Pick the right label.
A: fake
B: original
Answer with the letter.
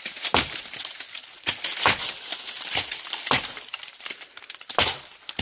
B